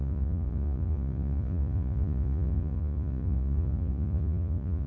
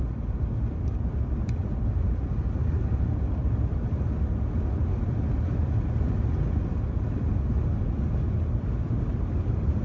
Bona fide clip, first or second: second